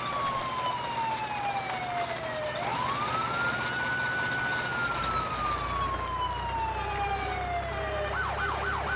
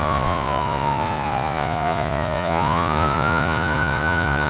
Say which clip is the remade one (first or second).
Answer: second